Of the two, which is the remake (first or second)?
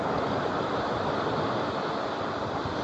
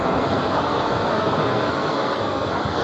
second